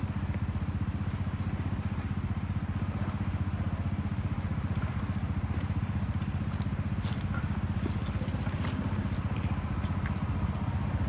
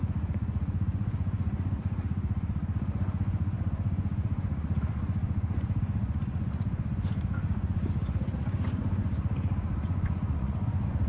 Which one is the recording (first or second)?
first